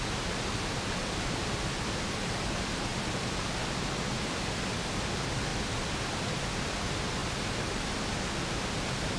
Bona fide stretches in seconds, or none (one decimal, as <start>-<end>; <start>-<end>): 0.0-5.5; 6.5-9.2